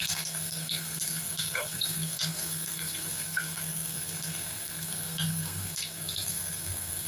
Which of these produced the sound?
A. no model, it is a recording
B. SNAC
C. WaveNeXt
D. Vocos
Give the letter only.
B